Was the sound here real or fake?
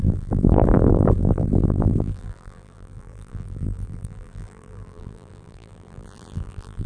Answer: fake